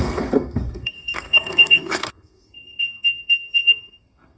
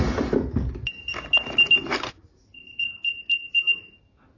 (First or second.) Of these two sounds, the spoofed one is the first